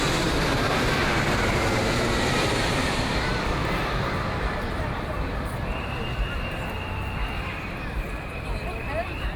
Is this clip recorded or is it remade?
remade